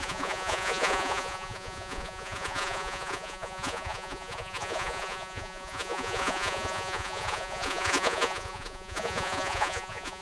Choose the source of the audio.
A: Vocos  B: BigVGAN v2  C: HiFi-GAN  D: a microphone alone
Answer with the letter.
A